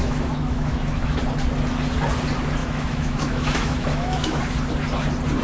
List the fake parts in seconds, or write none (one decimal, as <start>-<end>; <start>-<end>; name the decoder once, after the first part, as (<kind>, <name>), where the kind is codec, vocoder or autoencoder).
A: 0.0-1.2 (autoencoder, DAC-VAE); 2.6-4.4